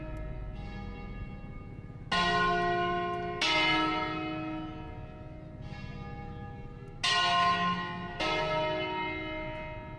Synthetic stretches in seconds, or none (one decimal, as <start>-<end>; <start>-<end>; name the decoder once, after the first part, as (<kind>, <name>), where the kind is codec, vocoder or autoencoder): none